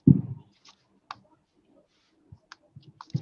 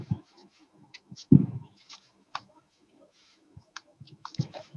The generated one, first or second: second